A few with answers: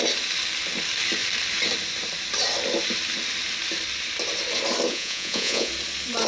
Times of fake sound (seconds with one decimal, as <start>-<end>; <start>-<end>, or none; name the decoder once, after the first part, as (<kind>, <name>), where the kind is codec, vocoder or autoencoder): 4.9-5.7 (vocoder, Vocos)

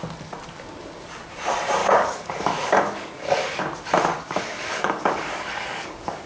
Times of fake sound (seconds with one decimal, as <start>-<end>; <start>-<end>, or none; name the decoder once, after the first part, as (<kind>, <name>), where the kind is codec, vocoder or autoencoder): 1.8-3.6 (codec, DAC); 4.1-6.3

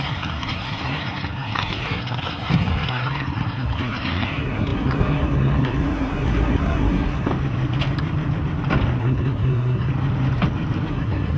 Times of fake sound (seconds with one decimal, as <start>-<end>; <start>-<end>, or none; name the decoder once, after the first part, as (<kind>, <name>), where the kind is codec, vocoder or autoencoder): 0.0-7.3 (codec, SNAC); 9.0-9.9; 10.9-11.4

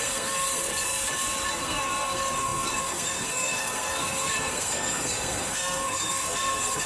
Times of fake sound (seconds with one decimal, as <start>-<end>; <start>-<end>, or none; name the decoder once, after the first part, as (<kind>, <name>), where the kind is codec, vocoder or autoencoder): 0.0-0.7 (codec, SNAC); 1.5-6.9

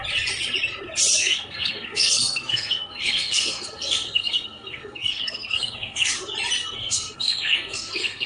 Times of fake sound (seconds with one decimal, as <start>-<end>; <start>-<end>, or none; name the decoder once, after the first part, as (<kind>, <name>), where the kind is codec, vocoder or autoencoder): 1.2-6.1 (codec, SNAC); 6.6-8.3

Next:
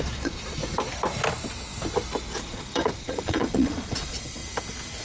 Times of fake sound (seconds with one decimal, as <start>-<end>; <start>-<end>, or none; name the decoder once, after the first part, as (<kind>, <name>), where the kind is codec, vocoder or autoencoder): 0.0-0.6 (vocoder, Vocos); 2.4-4.4